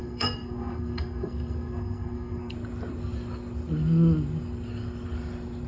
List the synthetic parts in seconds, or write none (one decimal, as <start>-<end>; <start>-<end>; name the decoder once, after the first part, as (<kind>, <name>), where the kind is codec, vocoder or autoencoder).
0.0-2.5 (codec, SNAC)

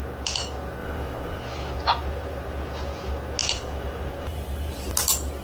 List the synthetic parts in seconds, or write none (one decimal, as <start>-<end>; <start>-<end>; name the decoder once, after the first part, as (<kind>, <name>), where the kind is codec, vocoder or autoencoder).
0.8-1.4 (vocoder, BigVGAN v2); 3.4-4.7

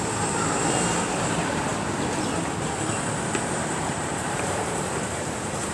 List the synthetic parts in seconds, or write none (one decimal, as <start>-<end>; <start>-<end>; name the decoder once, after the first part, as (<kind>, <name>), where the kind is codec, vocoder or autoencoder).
0.0-1.7 (vocoder, BigVGAN v2); 3.4-5.7

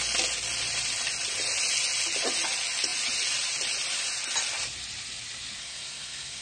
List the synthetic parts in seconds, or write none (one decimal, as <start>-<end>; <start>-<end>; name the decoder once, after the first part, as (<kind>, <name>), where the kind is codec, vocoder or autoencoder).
5.6-6.4 (codec, SNAC)

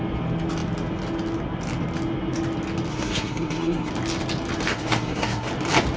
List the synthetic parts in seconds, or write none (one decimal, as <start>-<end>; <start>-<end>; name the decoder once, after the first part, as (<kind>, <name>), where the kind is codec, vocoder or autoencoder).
2.9-3.9 (codec, SNAC); 4.7-5.5

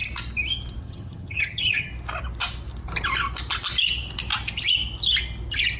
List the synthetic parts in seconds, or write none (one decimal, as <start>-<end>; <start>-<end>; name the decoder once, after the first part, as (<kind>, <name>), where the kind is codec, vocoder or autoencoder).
0.8-1.9 (vocoder, HiFi-GAN)

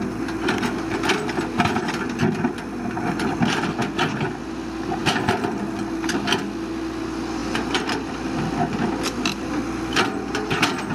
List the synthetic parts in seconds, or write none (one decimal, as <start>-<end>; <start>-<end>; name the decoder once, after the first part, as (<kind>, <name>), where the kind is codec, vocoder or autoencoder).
5.0-5.6 (vocoder, BigVGAN v2); 7.4-9.5

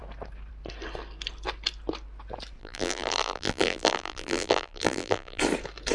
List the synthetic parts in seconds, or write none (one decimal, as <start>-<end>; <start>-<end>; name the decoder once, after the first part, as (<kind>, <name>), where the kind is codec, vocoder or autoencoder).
2.6-5.4 (vocoder, BigVGAN v2)